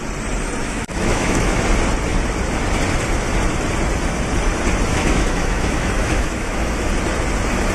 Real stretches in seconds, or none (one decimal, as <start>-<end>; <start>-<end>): 0.0-0.6; 1.6-4.9; 6.9-7.7